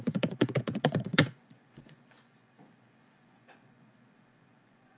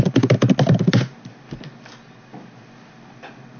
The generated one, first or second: first